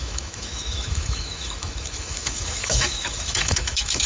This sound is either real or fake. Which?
fake